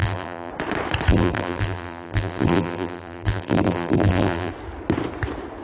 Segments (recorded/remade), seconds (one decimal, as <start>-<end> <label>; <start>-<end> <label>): 0.0-0.5 remade; 0.5-1.1 recorded; 1.1-4.5 remade; 4.5-5.6 recorded